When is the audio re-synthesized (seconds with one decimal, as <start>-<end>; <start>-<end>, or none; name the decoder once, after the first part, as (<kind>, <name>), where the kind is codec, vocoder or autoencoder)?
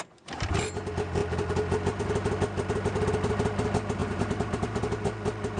4.0-4.8 (vocoder, BigVGAN v2)